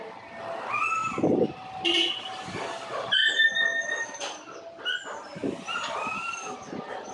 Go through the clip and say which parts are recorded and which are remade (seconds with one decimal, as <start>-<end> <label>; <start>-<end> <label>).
0.0-3.2 remade; 3.2-3.8 recorded; 3.8-5.4 remade; 5.4-6.1 recorded; 6.1-7.1 remade